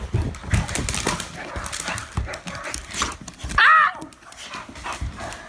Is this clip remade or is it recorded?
recorded